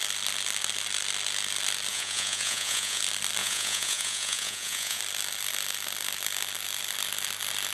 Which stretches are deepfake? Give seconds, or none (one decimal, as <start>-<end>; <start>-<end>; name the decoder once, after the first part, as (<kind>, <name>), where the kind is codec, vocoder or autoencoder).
1.9-3.0 (vocoder, Vocos); 3.4-5.0